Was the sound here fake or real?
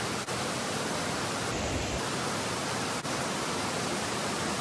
real